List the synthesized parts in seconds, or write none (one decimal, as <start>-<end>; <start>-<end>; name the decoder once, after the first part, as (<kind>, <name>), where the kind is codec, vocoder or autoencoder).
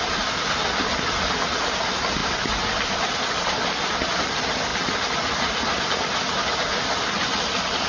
none